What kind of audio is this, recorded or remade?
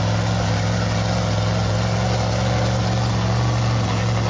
recorded